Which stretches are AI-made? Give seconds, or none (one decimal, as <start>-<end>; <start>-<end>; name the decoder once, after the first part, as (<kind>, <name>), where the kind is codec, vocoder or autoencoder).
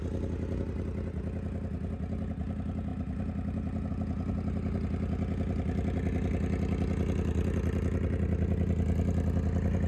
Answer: none